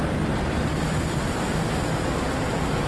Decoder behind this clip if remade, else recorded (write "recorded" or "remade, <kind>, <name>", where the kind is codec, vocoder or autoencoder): recorded